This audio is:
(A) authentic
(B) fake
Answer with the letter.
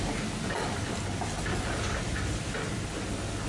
A